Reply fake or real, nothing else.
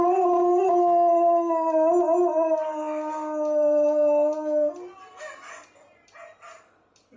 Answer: real